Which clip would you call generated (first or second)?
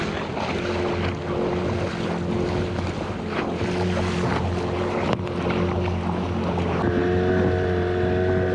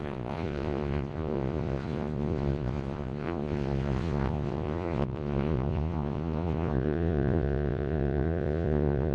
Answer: second